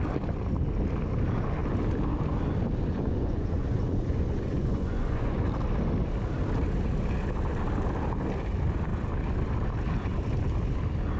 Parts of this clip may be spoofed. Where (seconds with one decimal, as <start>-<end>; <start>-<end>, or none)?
2.9-5.4

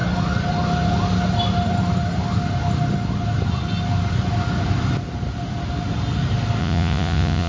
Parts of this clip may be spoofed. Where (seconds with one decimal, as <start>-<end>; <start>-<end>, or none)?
6.6-7.5

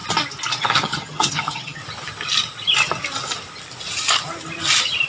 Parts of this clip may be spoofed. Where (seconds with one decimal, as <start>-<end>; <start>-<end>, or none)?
0.6-1.8

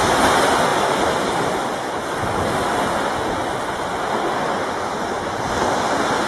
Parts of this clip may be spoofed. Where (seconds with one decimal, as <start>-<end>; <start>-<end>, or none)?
none

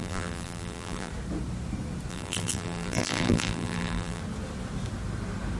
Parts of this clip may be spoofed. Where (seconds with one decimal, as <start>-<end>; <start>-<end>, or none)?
0.0-1.1; 2.1-4.2

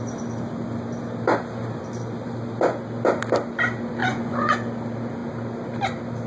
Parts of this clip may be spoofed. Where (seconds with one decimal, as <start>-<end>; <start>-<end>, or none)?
4.0-4.5

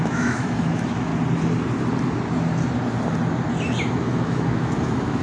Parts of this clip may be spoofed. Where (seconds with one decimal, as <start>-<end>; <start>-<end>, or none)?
0.0-1.1; 3.9-5.2

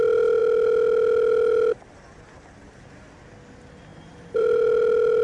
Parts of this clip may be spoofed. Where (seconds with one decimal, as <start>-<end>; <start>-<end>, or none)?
3.9-4.6